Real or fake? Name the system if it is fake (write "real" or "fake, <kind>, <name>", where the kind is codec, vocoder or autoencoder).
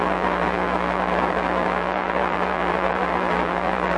fake, vocoder, BigVGAN v2